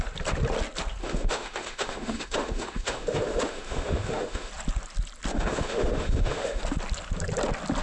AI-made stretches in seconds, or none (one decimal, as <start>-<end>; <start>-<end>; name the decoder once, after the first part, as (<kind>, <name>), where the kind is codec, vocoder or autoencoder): 1.0-4.5 (autoencoder, DAC-VAE); 5.3-6.6